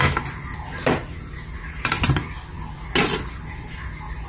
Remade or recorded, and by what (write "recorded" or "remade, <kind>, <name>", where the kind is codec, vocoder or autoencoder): recorded